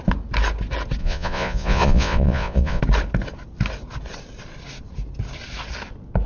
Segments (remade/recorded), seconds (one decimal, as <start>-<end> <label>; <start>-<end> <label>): 0.0-1.0 recorded; 1.0-2.8 remade; 2.8-6.3 recorded